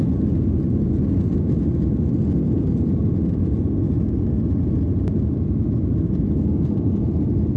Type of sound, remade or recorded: recorded